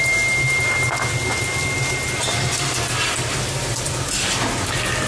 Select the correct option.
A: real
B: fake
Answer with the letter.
A